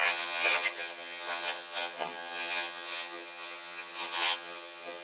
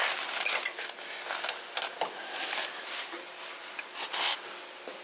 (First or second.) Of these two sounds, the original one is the second